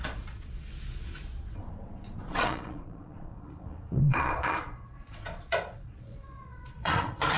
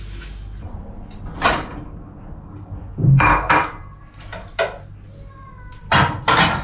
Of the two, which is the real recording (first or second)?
second